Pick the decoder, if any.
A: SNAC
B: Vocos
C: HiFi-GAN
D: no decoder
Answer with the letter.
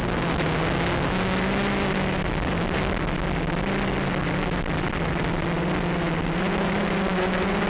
D